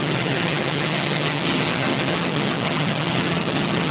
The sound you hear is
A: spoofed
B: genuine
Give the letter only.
A